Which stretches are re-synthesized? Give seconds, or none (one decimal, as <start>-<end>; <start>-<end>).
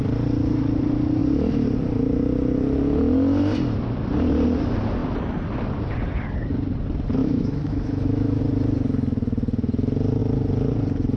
7.2-8.4